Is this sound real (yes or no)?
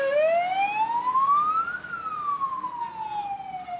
yes